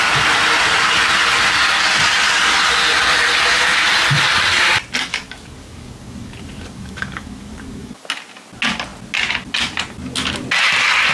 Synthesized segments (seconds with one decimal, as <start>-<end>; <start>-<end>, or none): 5.1-8.0